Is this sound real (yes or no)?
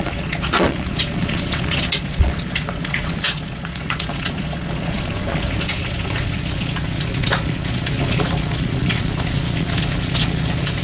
no